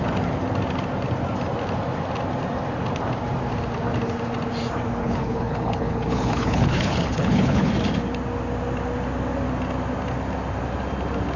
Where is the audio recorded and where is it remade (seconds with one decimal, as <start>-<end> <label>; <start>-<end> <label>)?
0.0-5.0 recorded; 5.0-7.7 remade; 7.7-11.4 recorded